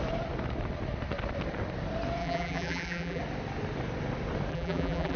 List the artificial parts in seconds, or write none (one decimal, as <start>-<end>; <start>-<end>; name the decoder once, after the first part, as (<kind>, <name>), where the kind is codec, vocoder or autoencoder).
2.2-3.2 (vocoder, BigVGAN v2); 4.5-5.2

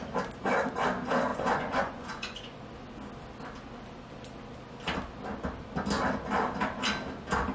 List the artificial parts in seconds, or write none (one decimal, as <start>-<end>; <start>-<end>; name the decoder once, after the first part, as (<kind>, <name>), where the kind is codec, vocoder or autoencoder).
1.3-2.6 (vocoder, Vocos)

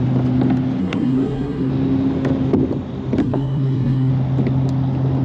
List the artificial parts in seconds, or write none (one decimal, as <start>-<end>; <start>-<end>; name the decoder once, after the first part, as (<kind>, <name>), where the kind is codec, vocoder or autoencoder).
0.8-1.7 (codec, SNAC); 3.2-4.1

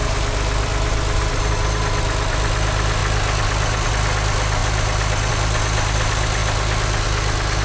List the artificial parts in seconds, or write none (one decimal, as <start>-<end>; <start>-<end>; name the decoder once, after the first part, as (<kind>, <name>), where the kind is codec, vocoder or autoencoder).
none

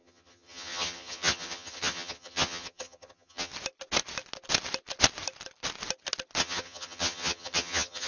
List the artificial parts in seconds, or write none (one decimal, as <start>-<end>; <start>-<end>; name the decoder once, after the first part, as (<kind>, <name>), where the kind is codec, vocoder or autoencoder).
0.0-3.5 (vocoder, HiFi-GAN); 6.4-8.1

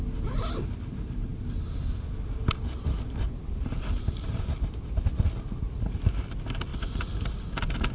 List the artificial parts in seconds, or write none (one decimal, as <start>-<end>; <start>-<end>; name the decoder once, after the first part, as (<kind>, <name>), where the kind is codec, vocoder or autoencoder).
none

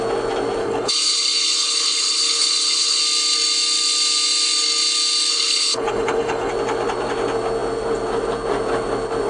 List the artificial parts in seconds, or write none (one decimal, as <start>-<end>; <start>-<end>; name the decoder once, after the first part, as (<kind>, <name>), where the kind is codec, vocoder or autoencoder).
0.6-3.0 (codec, HILCodec); 5.3-6.5